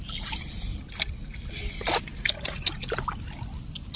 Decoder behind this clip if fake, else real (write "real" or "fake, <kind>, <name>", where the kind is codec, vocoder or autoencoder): real